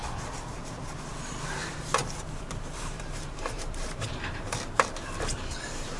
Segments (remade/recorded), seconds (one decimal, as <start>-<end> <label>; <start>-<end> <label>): 0.0-1.4 recorded; 1.4-6.0 remade